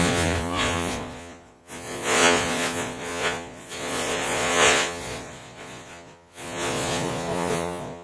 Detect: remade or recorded remade